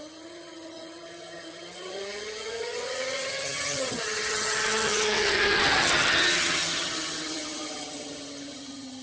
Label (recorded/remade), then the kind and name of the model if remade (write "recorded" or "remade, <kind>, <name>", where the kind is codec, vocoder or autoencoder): remade, vocoder, HiFi-GAN